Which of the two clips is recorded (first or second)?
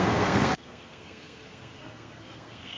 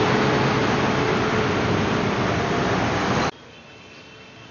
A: second